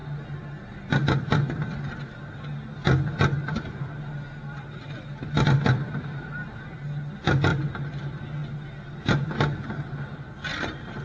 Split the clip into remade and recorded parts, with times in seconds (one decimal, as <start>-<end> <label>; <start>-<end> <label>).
0.0-11.0 recorded

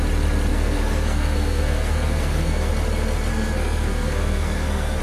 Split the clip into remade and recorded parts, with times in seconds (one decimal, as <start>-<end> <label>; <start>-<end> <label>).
0.0-0.5 recorded; 0.5-2.7 remade; 2.7-3.3 recorded; 3.3-5.0 remade

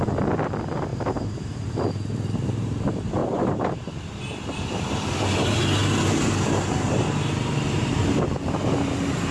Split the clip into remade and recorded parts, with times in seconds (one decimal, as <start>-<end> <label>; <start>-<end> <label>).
0.0-0.9 recorded; 0.9-1.7 remade; 1.7-3.2 recorded; 3.2-4.0 remade; 4.0-9.3 recorded